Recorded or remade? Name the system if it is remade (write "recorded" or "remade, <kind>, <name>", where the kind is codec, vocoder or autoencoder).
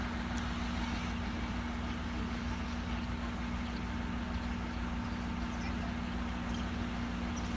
recorded